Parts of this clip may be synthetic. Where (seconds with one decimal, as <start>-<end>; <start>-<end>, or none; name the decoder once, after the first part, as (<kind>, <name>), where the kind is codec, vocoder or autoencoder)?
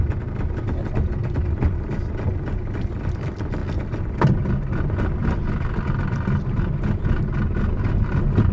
none